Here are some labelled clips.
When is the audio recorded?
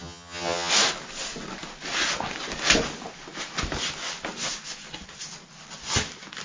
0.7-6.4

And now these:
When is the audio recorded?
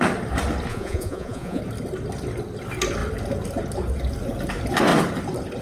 0.0-0.7; 1.6-5.6